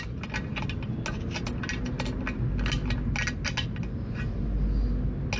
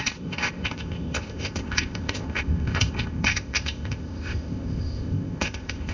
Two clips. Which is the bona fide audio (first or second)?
first